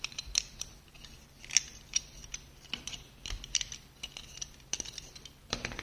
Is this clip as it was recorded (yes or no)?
no